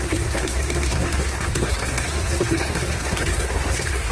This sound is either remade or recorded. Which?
remade